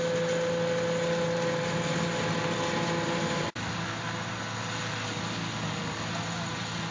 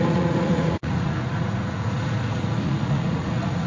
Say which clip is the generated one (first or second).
second